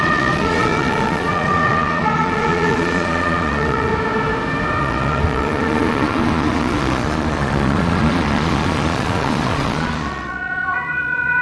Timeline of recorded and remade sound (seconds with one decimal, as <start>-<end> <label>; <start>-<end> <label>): 0.0-3.9 remade; 3.9-4.8 recorded; 4.8-11.4 remade